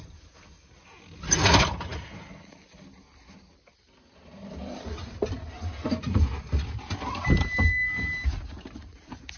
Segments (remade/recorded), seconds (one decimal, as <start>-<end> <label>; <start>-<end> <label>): 0.0-9.4 recorded